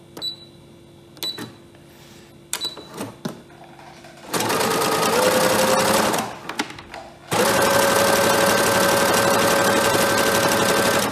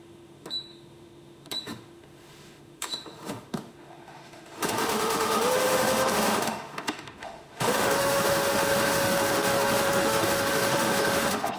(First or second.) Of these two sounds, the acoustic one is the first